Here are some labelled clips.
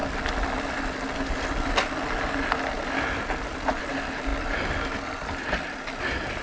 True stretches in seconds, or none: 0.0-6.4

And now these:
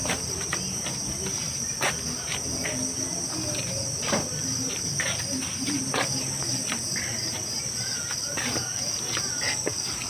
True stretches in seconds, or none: 0.0-10.1

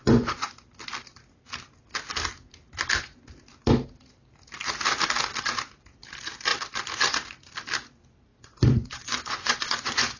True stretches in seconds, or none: 0.5-8.3

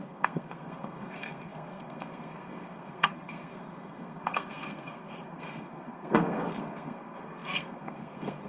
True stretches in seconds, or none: none